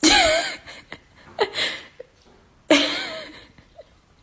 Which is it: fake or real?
real